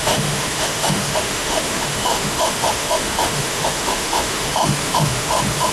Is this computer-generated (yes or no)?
yes